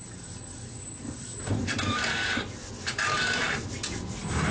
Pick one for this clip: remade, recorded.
remade